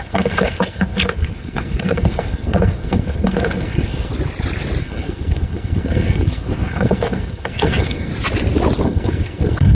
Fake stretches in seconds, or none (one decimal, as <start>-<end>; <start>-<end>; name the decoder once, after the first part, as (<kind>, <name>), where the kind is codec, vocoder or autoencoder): 0.0-4.1 (codec, SNAC); 4.8-8.1; 8.8-9.7